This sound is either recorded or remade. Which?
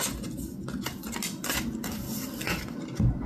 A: recorded